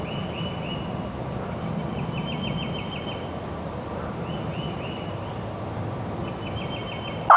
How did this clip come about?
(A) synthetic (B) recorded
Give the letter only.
B